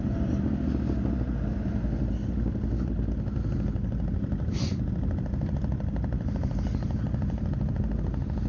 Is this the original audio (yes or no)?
yes